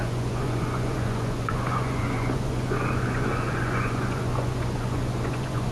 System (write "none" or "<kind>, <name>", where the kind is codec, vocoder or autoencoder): vocoder, Vocos